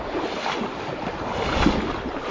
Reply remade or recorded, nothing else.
recorded